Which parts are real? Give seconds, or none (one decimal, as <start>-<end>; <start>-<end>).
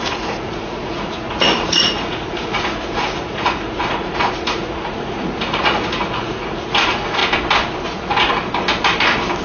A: 7.2-7.8; 8.4-9.4